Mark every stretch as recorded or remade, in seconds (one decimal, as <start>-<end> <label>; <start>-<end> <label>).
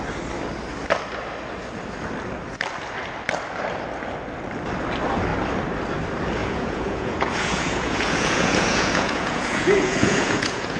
0.0-6.4 recorded; 6.4-10.8 remade